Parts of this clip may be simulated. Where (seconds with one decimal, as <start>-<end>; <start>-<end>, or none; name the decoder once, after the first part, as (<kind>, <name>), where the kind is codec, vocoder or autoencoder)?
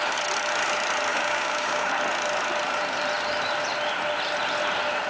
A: 1.1-1.9 (codec, DAC)